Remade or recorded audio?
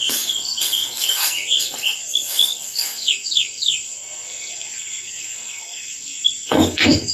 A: remade